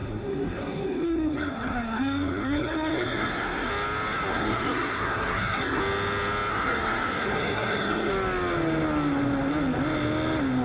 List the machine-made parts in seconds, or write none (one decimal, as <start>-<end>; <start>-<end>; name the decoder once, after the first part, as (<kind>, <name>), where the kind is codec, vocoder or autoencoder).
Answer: 0.0-3.7 (codec, SNAC); 4.3-5.8; 6.5-8.1